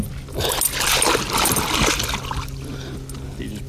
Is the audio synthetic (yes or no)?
no